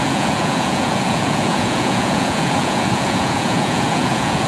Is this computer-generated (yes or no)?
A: yes